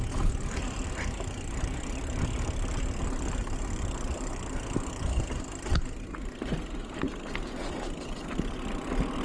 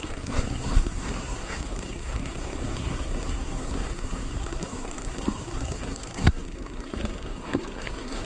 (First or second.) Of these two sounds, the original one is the first